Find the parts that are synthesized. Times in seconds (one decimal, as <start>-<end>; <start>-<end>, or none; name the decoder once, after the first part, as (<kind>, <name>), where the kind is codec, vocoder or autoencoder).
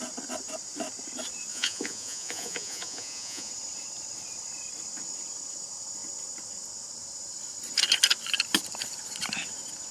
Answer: 1.5-3.5 (vocoder, Vocos)